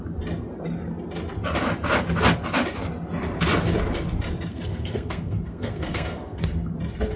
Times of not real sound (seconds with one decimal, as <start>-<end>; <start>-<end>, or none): 4.5-6.4